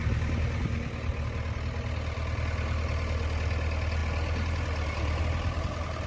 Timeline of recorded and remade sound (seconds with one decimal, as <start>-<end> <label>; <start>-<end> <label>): 0.0-6.1 recorded